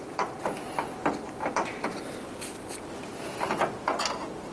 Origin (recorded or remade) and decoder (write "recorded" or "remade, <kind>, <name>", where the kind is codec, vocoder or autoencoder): recorded